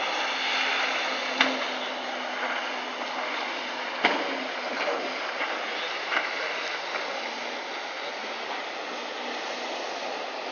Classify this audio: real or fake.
real